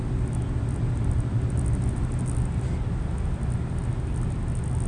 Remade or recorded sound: recorded